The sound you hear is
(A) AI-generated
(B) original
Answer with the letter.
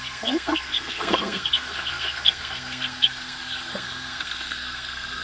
A